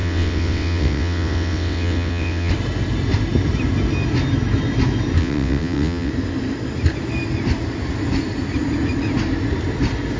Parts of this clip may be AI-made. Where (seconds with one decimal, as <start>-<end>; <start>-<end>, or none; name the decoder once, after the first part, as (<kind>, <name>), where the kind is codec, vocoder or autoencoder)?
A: 0.0-2.5 (vocoder, WaveNeXt); 5.2-6.1